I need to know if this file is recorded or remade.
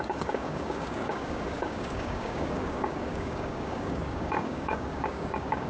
remade